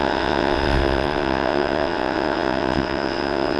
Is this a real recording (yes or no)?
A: no